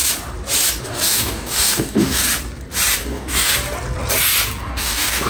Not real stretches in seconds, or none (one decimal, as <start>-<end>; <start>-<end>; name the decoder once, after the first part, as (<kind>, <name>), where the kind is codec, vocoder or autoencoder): 0.8-2.3 (codec, DAC); 3.0-3.5; 4.6-5.3